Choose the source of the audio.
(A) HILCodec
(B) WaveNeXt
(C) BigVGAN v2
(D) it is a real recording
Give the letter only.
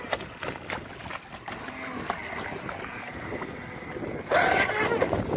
D